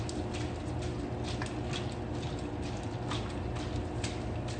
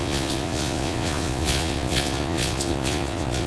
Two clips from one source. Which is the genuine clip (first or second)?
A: first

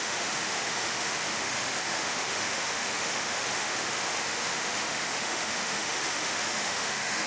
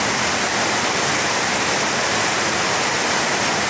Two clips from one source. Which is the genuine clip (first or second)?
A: second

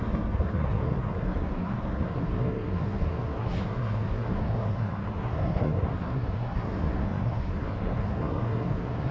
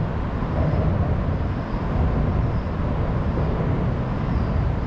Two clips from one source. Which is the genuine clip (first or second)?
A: second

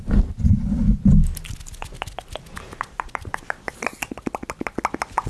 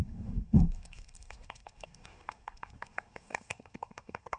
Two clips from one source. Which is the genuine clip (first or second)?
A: first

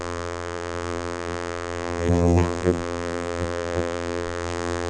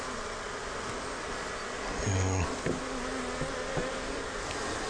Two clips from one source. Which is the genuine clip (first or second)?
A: second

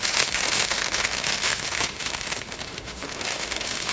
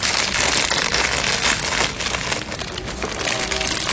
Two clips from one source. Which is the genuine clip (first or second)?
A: second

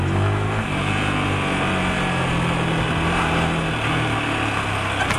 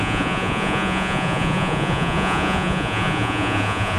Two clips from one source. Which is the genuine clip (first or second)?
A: first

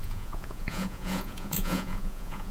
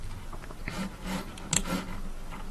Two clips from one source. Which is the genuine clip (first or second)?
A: second